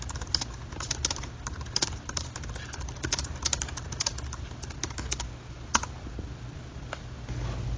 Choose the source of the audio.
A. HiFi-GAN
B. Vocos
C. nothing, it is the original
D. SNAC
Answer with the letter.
C